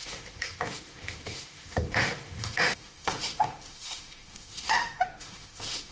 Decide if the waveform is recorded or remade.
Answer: remade